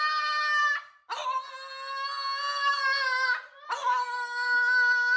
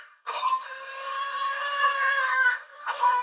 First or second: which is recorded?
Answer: first